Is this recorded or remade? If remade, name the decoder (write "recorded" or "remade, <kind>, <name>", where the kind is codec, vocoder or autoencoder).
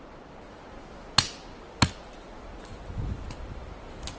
recorded